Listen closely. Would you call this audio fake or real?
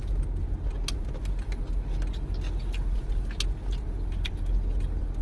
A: real